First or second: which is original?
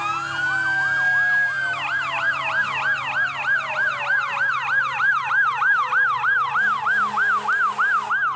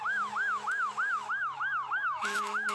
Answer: first